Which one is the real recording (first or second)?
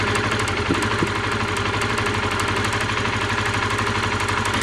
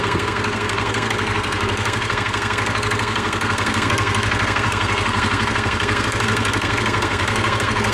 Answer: first